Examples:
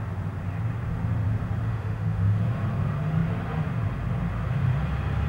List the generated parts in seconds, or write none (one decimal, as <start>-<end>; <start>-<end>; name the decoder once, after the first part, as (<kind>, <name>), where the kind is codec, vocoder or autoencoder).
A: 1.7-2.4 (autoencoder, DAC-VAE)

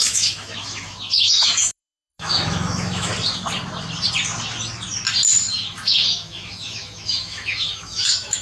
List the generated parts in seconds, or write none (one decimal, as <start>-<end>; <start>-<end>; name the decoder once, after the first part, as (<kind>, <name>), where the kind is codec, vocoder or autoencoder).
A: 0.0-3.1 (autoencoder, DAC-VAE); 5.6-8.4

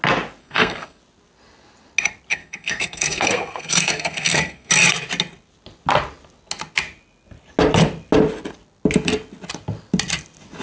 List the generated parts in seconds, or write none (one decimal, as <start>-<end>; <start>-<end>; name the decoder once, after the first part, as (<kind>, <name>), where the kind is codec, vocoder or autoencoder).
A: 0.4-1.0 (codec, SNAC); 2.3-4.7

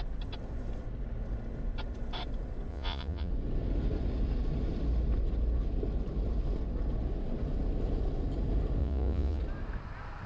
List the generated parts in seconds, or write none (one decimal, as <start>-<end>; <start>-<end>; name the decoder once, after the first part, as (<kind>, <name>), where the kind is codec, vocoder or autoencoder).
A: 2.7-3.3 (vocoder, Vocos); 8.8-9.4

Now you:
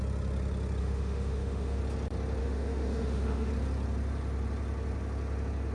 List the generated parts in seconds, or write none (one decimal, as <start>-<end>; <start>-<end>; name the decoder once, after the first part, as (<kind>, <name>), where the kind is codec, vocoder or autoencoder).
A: 0.8-1.8 (autoencoder, DAC-VAE); 2.4-3.5